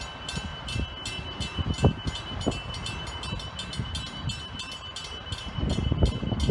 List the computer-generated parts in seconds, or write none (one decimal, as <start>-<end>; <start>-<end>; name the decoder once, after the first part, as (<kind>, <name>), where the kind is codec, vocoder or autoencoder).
none